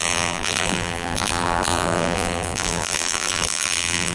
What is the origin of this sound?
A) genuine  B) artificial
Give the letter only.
B